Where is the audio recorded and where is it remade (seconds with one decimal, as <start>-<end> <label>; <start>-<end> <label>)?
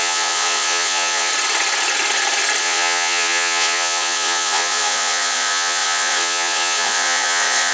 0.0-1.3 remade; 1.3-2.6 recorded; 2.6-7.7 remade